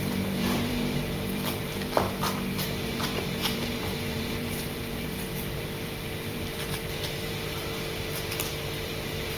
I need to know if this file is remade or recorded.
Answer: remade